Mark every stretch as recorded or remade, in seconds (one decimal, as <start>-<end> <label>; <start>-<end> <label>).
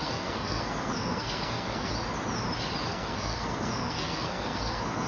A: 0.0-1.9 remade; 1.9-2.9 recorded; 2.9-5.1 remade